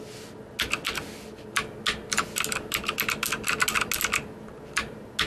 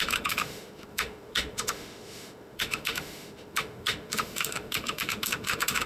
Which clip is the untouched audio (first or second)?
first